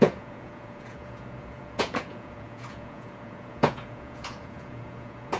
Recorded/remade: remade